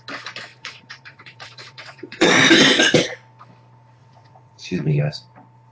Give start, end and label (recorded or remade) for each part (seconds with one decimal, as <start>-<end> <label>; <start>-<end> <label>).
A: 0.0-0.5 recorded; 0.5-2.3 remade; 2.3-4.0 recorded; 4.0-5.0 remade; 5.0-5.7 recorded